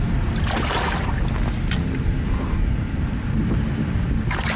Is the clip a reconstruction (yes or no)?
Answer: no